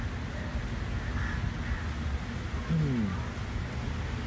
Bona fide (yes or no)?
yes